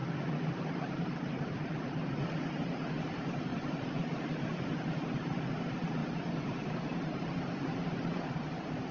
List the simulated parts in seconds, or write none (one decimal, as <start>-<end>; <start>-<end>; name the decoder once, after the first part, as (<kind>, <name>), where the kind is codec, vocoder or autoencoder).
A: 0.5-2.2 (vocoder, BigVGAN v2); 3.0-6.0; 6.7-8.9